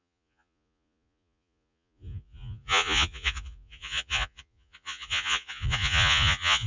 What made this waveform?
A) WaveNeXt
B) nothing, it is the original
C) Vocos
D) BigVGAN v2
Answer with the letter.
C